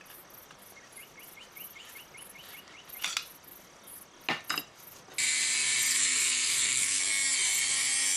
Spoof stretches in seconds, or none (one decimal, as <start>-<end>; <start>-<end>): 5.9-7.0